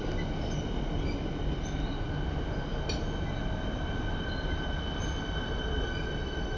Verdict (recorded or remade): recorded